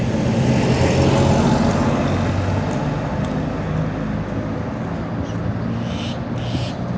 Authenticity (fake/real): real